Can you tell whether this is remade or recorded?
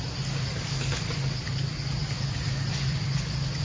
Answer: recorded